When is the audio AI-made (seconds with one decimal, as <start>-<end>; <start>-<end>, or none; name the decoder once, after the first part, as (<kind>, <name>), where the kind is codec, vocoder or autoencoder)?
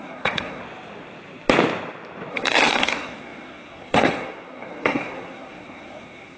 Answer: 0.0-0.6 (codec, SNAC); 2.3-6.4